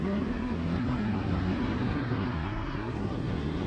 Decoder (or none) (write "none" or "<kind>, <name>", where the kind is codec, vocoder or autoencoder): codec, SNAC